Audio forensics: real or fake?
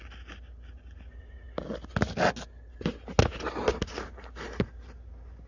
real